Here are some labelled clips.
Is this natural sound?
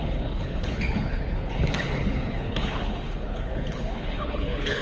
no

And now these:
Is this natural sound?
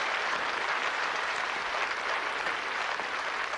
yes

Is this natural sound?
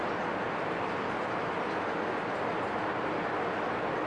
yes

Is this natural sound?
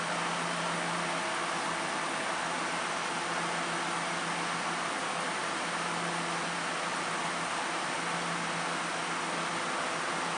yes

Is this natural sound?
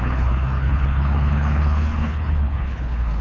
no